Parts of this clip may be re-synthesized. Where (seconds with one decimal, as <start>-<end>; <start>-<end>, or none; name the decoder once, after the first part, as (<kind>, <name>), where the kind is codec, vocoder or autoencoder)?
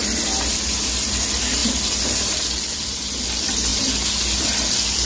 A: none